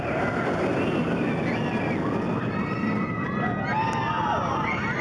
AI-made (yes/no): no